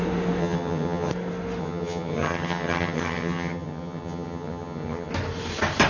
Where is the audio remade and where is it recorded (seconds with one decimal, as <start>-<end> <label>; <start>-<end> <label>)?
0.0-0.4 recorded; 0.4-1.1 remade; 1.1-1.6 recorded; 1.6-5.1 remade; 5.1-5.9 recorded